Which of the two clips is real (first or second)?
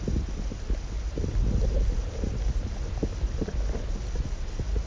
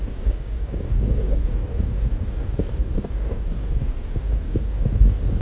first